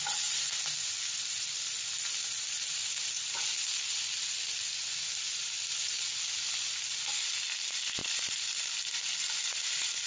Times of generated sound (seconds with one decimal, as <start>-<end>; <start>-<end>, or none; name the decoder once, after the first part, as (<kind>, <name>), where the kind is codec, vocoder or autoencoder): 8.0-8.6 (vocoder, BigVGAN v2)